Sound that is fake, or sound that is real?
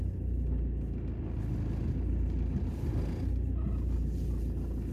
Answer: real